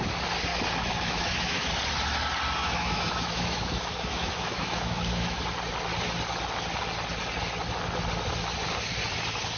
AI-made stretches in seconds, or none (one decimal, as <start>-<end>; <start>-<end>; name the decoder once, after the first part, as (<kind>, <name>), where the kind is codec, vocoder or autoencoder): 0.5-1.7 (autoencoder, DAC-VAE); 2.6-5.4